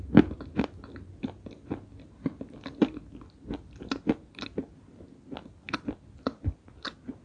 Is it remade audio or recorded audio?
recorded